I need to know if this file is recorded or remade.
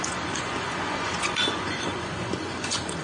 remade